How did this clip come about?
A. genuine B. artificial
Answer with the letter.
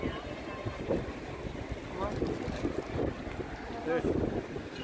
A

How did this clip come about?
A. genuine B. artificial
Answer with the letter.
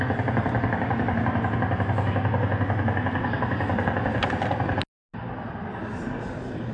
A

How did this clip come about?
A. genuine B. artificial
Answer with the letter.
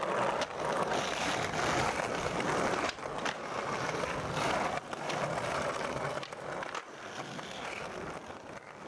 A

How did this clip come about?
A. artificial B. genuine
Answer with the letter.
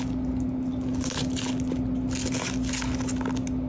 B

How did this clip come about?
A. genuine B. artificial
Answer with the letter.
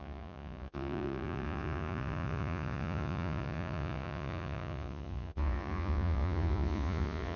B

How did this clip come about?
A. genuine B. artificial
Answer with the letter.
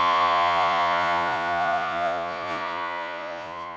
B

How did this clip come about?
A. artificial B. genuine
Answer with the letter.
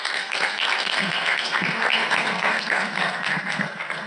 A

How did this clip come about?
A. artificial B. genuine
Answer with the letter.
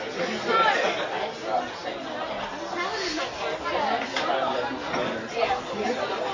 B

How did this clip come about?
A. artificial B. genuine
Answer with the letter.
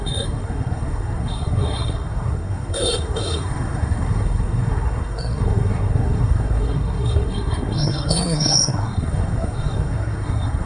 A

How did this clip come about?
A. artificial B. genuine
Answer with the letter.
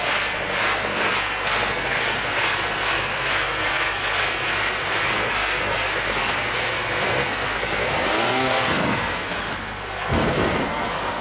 A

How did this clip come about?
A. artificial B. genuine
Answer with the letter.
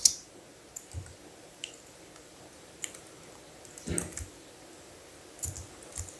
B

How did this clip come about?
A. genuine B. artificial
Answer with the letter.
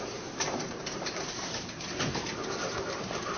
B